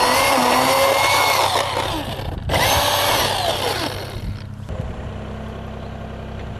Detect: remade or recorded recorded